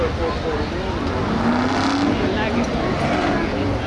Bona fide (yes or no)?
yes